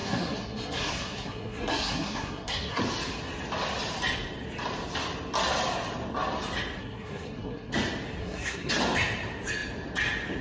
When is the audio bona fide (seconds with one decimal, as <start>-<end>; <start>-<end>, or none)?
2.8-6.8; 7.7-8.2; 8.7-10.4